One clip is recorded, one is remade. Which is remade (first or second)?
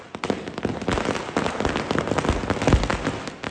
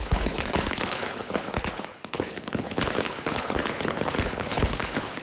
second